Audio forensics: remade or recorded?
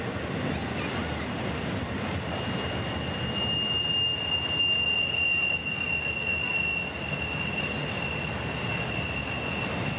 recorded